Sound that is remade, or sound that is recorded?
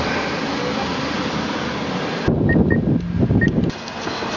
recorded